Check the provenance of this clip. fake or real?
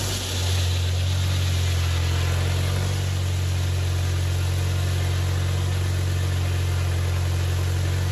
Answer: real